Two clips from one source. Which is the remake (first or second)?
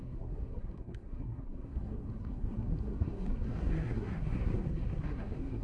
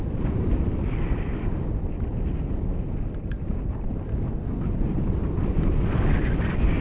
first